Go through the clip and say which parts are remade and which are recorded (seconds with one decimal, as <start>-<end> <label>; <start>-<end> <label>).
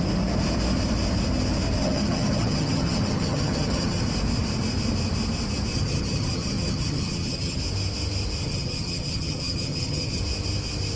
0.0-1.8 recorded; 1.8-4.0 remade; 4.0-5.7 recorded; 5.7-7.6 remade; 7.6-8.4 recorded; 8.4-10.2 remade; 10.2-11.0 recorded